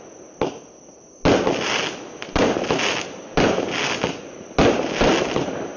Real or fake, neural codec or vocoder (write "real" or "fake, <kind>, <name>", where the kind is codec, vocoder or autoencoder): real